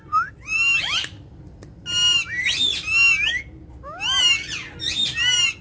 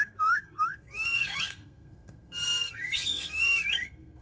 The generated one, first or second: second